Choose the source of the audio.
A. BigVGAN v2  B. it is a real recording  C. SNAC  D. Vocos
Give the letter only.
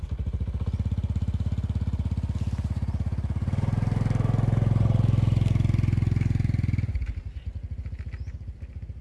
B